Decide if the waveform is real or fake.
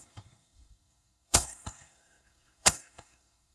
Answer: fake